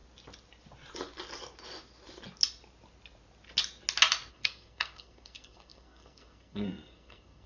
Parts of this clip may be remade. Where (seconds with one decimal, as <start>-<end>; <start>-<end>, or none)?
4.3-7.5